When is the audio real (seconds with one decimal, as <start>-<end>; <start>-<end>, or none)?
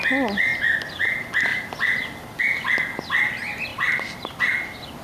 0.0-1.5; 2.4-3.7; 4.4-5.0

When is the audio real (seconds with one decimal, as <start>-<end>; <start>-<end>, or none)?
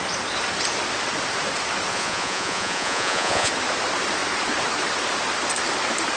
0.0-1.9; 3.5-6.2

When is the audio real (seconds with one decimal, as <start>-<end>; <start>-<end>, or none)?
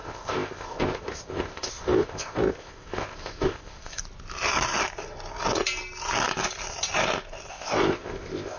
4.0-7.5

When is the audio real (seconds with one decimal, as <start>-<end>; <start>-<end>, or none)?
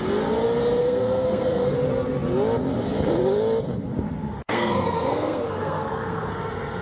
0.0-0.8; 1.7-4.2; 6.3-6.8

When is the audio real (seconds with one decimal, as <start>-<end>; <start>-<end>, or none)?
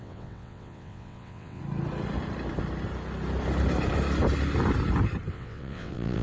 1.6-5.3